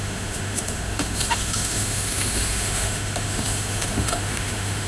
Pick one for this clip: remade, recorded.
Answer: remade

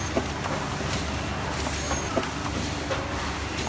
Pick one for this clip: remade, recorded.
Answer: recorded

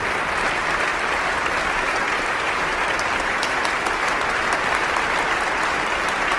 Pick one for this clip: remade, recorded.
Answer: remade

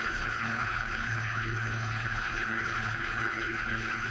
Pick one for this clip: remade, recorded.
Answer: remade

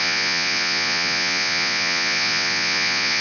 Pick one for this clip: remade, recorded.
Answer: remade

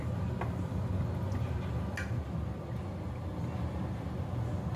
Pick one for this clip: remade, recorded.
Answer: recorded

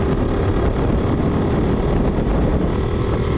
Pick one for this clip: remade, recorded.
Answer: recorded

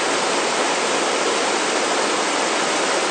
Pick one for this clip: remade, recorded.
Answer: recorded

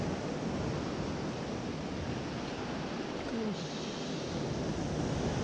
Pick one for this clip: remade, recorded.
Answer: recorded